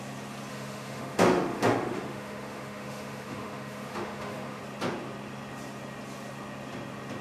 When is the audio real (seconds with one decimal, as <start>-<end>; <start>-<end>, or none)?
0.0-0.5; 4.6-7.2